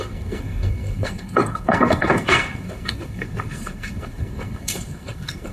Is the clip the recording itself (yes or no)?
no